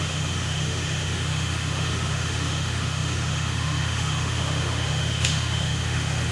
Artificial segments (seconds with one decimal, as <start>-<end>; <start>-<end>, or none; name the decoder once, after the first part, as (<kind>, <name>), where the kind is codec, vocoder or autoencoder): 0.0-6.3 (autoencoder, DAC-VAE)